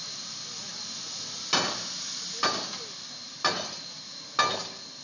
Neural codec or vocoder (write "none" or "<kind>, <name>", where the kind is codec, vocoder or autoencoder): none